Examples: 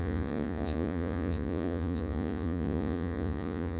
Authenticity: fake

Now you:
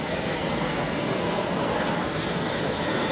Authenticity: fake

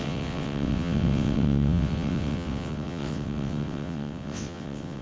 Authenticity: fake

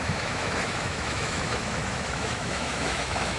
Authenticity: fake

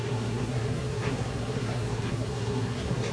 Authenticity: fake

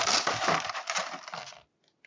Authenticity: real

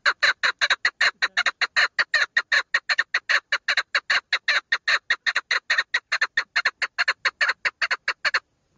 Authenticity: real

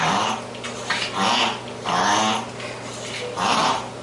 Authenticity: real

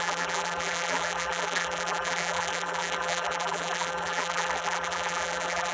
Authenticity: fake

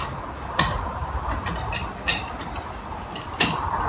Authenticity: real